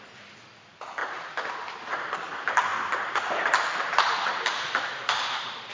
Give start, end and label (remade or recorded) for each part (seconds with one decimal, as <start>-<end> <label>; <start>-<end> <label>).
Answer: 0.0-5.7 remade